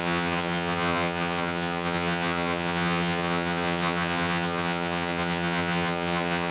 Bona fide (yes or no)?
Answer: no